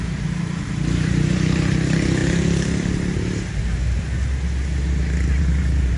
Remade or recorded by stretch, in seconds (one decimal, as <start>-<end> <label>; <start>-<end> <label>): 0.0-2.2 remade; 2.2-5.4 recorded; 5.4-6.0 remade